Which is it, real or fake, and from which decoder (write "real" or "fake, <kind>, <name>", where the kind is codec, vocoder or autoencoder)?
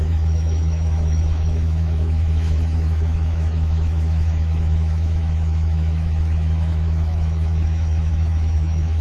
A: fake, autoencoder, DAC-VAE